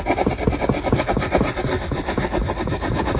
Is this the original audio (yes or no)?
yes